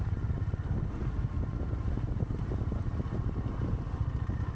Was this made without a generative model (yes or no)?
yes